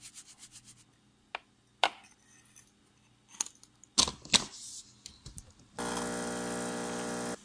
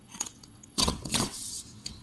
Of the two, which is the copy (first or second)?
second